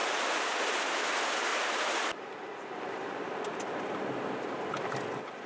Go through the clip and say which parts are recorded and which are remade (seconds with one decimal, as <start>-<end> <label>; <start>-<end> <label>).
0.0-1.5 recorded; 1.5-3.8 remade; 3.8-5.5 recorded